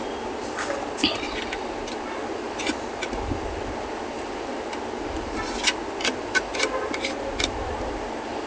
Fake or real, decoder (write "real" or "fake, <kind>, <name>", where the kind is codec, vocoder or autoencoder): real